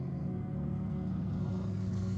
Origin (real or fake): fake